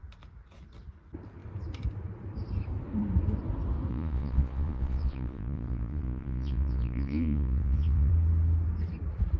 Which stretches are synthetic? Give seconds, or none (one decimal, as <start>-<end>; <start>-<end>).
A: 3.9-8.1